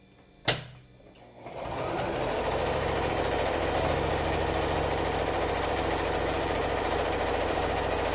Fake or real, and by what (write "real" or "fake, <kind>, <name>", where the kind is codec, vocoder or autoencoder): fake, vocoder, BigVGAN v2